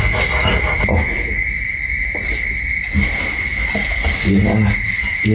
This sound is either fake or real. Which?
real